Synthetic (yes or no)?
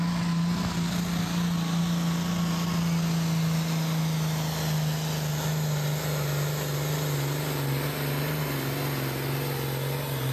no